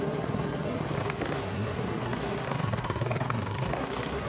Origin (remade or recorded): remade